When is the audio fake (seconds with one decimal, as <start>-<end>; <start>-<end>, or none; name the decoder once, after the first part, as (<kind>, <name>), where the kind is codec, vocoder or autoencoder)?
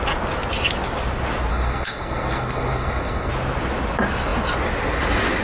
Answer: 1.5-3.3 (codec, SNAC)